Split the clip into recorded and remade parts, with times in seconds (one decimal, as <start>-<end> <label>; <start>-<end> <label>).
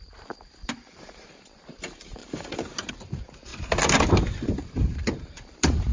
0.0-3.5 remade; 3.5-4.1 recorded; 4.1-5.9 remade